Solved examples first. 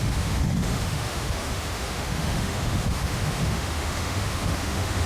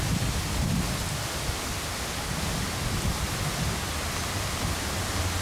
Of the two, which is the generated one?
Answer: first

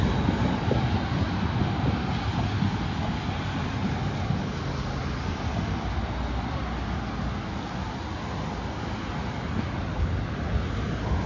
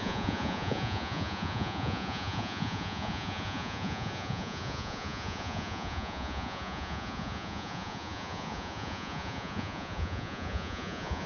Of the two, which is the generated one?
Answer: second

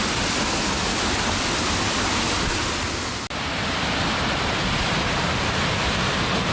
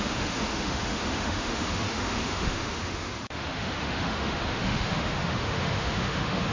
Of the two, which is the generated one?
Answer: second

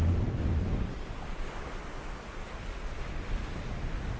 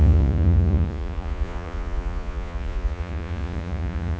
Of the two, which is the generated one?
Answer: second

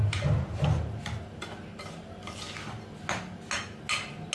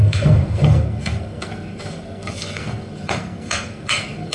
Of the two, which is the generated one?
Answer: second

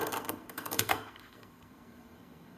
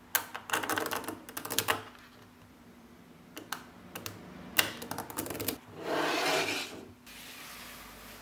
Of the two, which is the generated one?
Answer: first